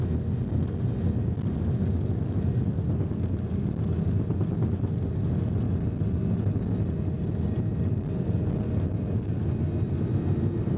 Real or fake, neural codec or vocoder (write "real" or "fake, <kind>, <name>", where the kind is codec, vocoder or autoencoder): real